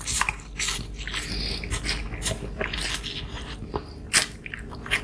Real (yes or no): yes